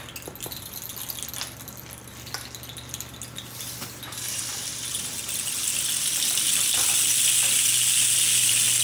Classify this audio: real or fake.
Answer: real